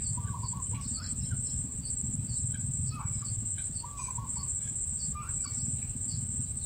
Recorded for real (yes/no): yes